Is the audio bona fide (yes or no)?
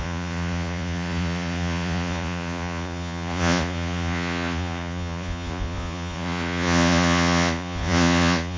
no